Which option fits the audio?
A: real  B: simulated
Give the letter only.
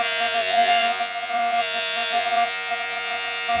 B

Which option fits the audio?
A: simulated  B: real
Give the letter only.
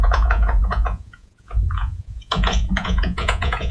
A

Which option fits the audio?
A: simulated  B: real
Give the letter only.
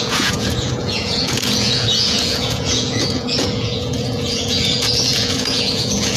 A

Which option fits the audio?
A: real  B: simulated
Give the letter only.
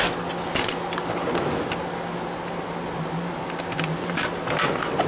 A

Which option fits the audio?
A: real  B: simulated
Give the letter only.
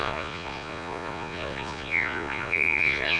B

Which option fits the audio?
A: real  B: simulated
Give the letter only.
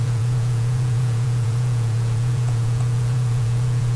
B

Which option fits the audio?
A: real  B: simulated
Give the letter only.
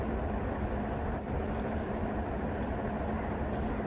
A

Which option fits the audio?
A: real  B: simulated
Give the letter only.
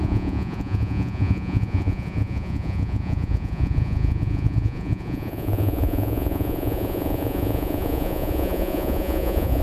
B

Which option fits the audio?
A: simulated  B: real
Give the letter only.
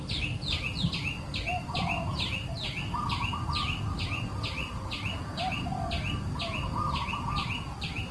B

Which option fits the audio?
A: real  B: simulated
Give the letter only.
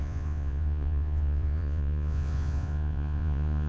B